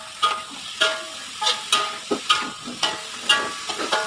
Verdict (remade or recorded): recorded